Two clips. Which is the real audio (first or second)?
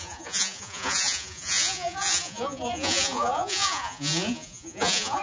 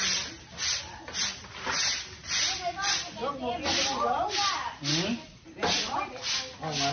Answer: second